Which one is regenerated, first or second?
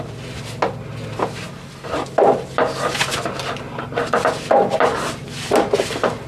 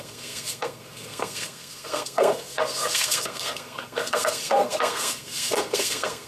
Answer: second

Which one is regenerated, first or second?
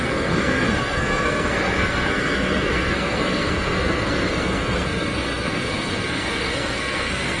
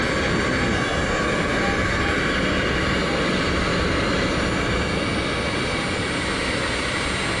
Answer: first